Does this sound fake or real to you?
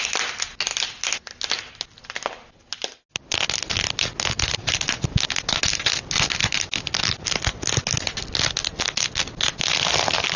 real